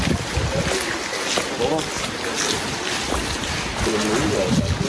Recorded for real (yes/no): yes